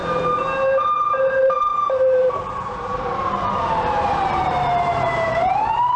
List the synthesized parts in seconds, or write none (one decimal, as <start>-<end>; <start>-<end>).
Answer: 0.8-6.0

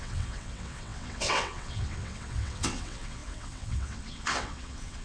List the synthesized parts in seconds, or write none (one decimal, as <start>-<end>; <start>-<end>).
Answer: 0.0-5.0

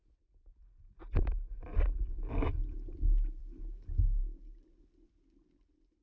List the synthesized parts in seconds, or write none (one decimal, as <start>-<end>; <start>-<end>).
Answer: 0.0-3.6

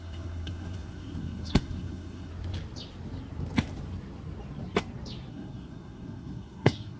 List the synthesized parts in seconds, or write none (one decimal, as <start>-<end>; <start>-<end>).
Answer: 0.0-2.3; 5.3-7.0

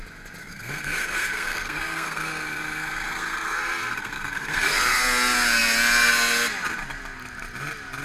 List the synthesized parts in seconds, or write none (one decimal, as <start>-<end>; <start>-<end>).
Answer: 0.4-5.0

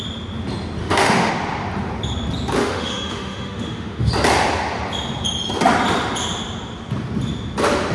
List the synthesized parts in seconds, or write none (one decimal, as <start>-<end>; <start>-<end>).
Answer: 0.8-1.3; 2.6-4.1

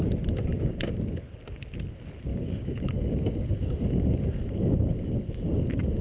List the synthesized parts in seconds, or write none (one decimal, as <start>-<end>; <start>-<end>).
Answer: 0.5-1.0; 2.3-6.0

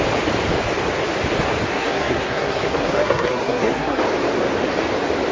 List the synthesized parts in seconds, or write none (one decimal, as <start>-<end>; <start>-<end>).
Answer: 1.7-4.0